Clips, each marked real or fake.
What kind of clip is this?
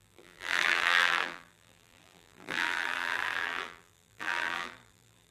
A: fake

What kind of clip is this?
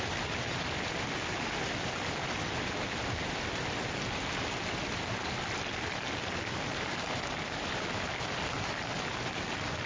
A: real